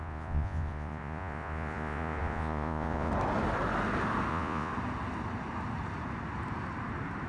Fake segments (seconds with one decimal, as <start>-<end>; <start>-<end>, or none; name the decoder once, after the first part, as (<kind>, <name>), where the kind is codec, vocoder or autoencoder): 0.0-3.1 (vocoder, Vocos); 4.3-4.7